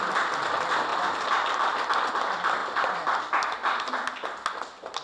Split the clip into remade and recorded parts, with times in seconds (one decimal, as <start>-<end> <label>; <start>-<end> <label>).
0.0-0.9 recorded; 0.9-2.1 remade; 2.1-5.0 recorded